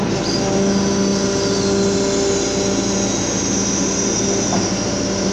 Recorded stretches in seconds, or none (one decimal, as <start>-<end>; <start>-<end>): 0.0-5.3